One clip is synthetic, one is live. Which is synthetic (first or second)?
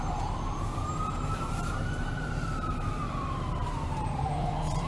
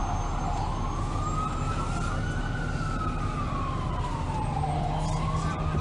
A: first